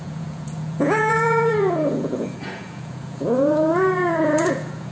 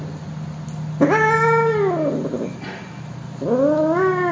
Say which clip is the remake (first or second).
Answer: first